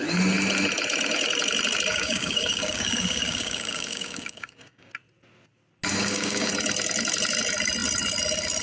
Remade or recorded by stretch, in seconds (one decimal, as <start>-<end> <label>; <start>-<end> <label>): 0.0-1.9 recorded; 1.9-4.9 remade; 4.9-5.9 recorded; 5.9-6.5 remade; 6.5-8.6 recorded